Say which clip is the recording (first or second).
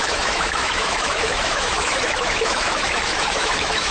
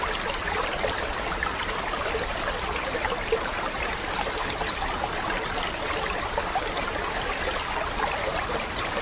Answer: second